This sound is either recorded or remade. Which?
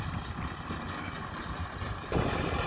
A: recorded